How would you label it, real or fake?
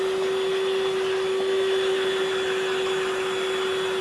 real